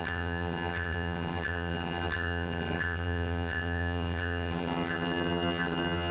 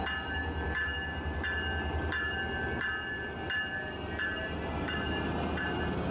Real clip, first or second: second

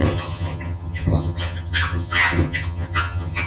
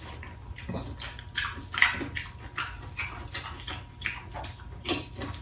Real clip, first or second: second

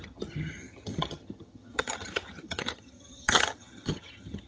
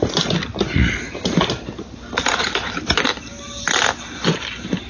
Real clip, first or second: second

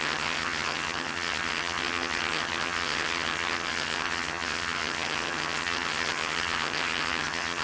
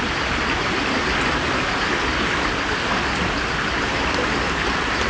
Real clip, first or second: second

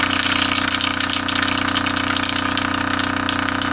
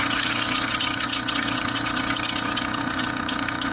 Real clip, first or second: first